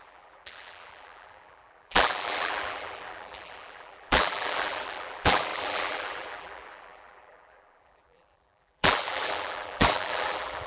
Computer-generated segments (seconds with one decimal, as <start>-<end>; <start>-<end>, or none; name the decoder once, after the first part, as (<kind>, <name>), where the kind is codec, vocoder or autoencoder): 0.0-10.7 (vocoder, BigVGAN v2)